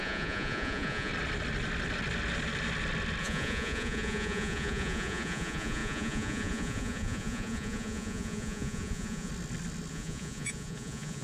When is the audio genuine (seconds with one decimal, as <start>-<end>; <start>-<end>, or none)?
1.1-3.2; 9.3-9.9